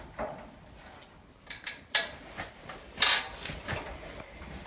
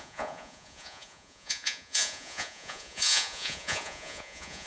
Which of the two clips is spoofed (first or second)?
second